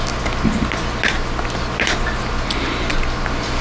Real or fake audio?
real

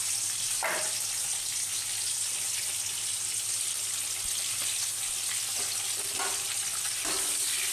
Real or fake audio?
real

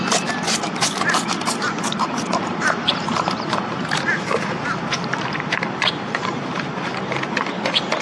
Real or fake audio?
fake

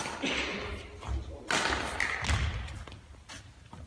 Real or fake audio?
real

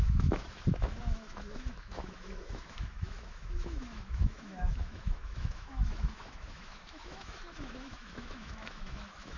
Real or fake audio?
fake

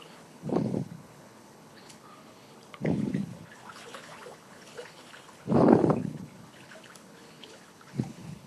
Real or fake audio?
fake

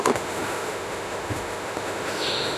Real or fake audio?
fake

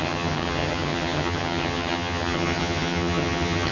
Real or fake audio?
fake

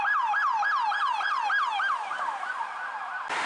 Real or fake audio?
real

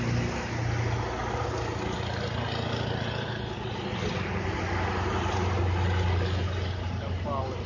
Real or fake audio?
real